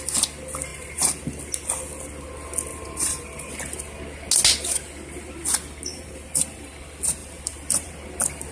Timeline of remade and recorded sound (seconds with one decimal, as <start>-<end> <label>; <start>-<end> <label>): 0.0-0.7 recorded; 0.7-1.2 remade; 1.2-2.7 recorded; 2.7-3.5 remade; 3.5-5.9 recorded; 5.9-6.8 remade; 6.8-7.2 recorded; 7.2-7.9 remade; 7.9-8.5 recorded